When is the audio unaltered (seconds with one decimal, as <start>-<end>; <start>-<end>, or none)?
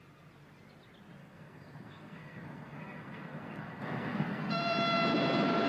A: 0.0-1.2; 4.6-5.7